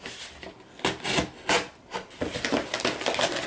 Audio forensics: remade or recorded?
recorded